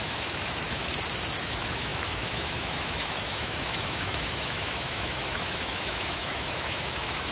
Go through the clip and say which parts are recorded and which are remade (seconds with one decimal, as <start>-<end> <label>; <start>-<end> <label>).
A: 0.0-0.8 remade; 0.8-1.4 recorded; 1.4-7.3 remade